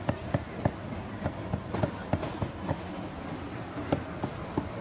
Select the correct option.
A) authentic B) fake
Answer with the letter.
A